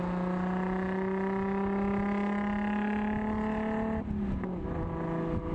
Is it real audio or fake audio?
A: real